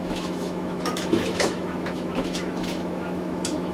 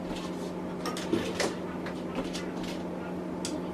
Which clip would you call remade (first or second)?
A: first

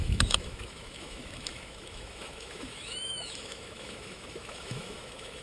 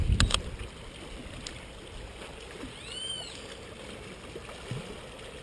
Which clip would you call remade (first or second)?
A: first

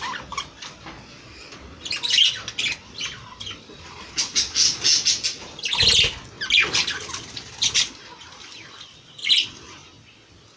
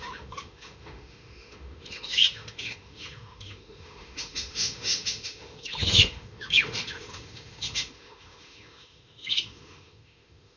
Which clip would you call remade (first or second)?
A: second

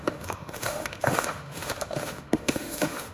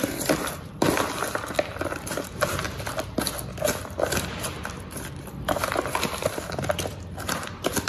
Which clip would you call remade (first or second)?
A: first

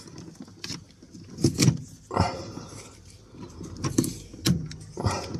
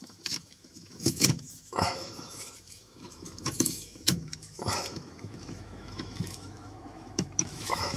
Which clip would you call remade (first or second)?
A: second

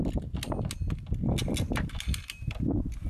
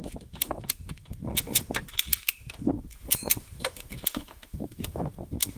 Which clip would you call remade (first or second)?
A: second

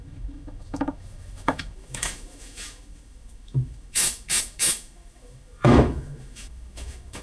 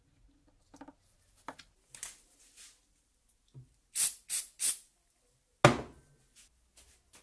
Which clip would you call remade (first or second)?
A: first